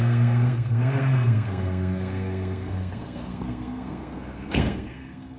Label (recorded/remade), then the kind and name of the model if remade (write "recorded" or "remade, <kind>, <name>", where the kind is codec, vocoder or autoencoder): remade, codec, SNAC